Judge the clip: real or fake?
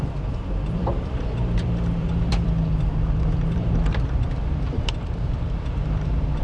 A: fake